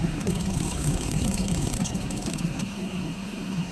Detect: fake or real fake